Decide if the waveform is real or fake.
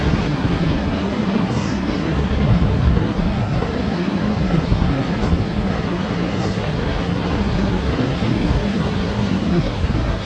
fake